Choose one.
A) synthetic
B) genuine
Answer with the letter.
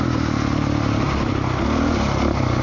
B